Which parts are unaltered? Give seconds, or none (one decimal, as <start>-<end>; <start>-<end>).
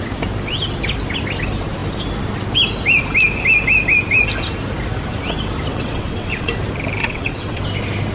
0.0-5.7; 6.5-7.0; 7.6-8.1